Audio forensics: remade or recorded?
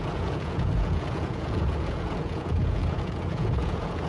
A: remade